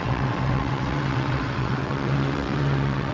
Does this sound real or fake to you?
fake